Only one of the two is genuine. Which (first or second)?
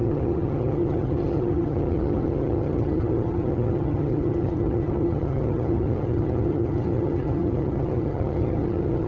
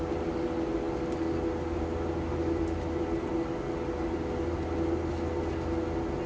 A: second